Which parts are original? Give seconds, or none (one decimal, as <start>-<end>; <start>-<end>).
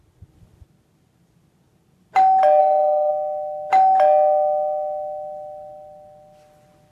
0.0-2.6; 3.1-6.9